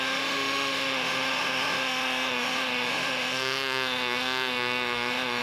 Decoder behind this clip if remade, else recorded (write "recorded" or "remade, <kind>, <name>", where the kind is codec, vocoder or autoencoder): remade, autoencoder, DAC-VAE